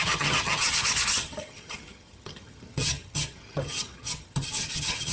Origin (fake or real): fake